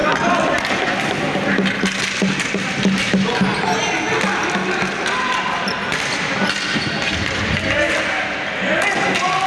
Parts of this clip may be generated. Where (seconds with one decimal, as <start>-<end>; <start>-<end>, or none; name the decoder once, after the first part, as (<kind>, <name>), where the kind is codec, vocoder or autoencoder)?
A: none